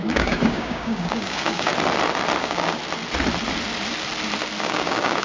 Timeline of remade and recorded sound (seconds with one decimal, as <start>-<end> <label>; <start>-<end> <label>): 0.0-1.7 remade; 1.7-2.4 recorded; 2.4-2.8 remade; 2.8-4.6 recorded; 4.6-5.2 remade